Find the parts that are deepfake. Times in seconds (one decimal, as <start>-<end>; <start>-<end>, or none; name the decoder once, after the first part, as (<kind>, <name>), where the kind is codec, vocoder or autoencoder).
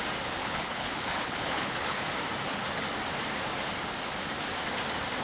0.4-2.0 (codec, HILCodec)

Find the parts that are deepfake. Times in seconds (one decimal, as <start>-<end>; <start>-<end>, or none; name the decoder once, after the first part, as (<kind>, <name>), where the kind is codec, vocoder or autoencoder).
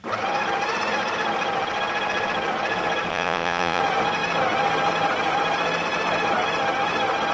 3.1-3.8 (vocoder, Vocos)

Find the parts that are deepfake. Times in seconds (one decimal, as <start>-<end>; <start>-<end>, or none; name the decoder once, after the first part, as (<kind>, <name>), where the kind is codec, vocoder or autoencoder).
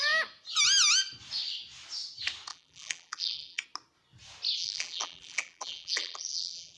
2.5-3.6 (vocoder, BigVGAN v2); 4.6-6.8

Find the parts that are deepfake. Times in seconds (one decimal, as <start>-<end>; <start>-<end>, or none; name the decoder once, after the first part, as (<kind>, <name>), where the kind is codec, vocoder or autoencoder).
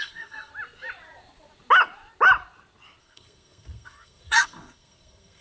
0.0-0.5 (codec, SNAC); 3.0-5.4